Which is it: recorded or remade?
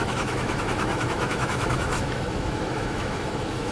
remade